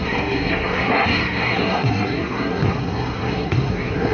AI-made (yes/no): yes